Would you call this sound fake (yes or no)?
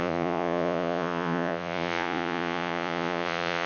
yes